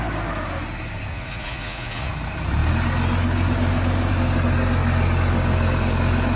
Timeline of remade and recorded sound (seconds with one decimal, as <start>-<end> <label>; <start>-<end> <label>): 0.0-1.1 recorded; 1.1-2.1 remade; 2.1-6.4 recorded